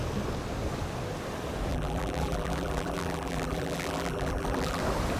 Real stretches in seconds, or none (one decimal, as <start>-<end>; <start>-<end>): 0.0-1.7; 4.8-5.2